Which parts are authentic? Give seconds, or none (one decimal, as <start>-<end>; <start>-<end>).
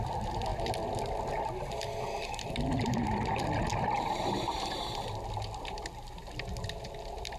0.0-3.7; 4.5-7.4